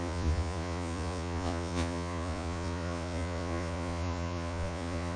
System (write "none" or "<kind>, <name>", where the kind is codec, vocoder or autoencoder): vocoder, Vocos